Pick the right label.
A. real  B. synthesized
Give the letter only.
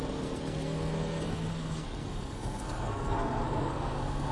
B